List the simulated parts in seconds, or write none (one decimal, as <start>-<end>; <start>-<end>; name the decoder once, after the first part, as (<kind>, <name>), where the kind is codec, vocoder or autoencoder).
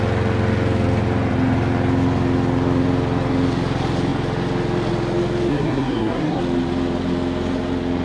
5.5-6.4 (codec, SNAC)